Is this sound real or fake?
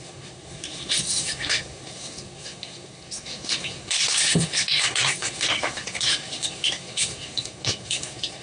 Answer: fake